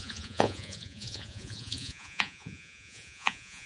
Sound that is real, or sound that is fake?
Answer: fake